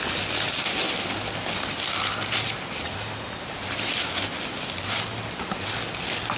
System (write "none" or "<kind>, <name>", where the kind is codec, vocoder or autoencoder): none